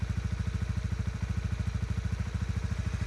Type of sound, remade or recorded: recorded